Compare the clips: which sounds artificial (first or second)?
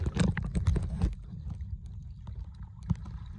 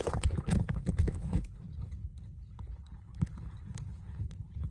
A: second